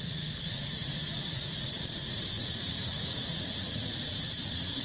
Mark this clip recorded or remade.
remade